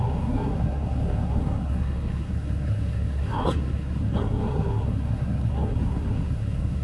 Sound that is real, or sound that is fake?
fake